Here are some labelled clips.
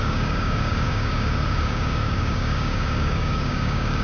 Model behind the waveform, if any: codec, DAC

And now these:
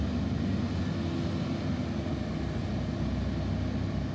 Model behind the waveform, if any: none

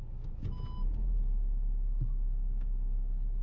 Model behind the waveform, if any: none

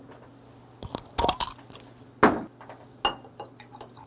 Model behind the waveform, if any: none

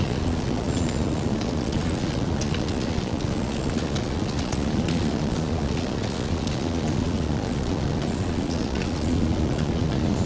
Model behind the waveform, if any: vocoder, Vocos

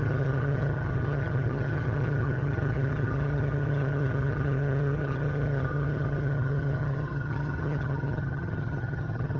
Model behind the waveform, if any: vocoder, HiFi-GAN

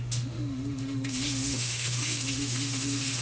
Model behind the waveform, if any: autoencoder, DAC-VAE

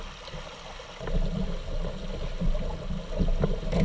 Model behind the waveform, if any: none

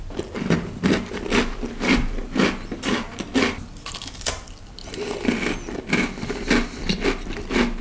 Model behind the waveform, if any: none